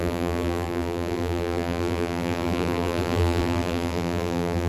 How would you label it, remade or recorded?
remade